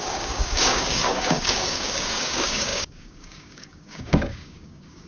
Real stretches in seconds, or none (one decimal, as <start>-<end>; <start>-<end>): none